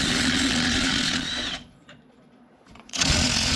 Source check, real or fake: fake